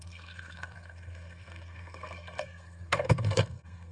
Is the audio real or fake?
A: fake